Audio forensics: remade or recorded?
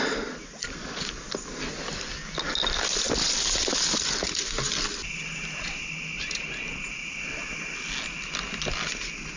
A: recorded